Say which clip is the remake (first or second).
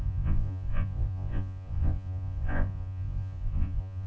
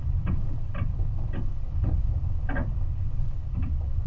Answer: first